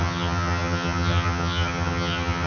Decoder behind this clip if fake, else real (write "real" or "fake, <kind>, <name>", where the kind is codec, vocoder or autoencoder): fake, vocoder, HiFi-GAN